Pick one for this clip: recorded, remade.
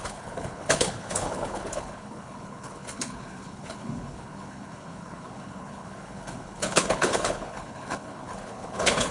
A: remade